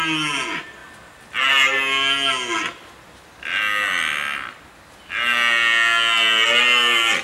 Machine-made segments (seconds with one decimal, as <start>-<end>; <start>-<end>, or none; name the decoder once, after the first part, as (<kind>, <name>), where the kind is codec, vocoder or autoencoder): none